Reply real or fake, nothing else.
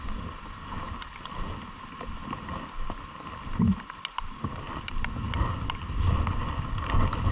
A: real